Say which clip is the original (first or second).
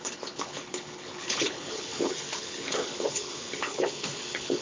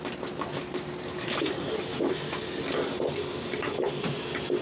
second